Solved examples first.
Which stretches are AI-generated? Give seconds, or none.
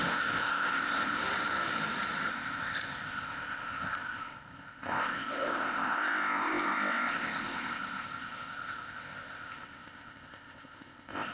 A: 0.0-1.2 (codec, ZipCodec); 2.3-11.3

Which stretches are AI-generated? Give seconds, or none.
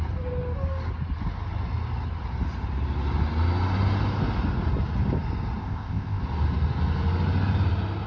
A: 5.6-6.2 (codec, ZipCodec)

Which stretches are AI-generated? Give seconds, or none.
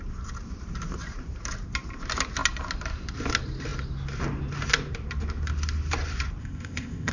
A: 6.4-7.1 (codec, ZipCodec)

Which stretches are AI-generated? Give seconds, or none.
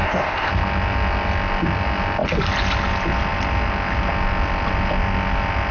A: 0.0-0.5 (codec, ZipCodec)